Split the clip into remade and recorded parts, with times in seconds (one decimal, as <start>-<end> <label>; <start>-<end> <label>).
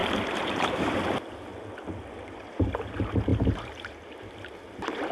0.0-1.0 remade; 1.0-3.3 recorded; 3.3-4.3 remade; 4.3-5.1 recorded